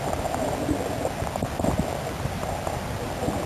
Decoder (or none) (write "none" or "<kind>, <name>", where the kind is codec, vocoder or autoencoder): none